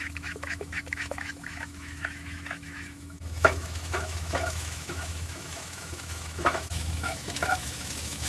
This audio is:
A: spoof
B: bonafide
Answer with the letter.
A